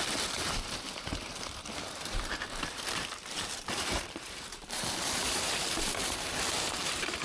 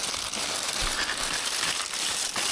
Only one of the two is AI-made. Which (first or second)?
first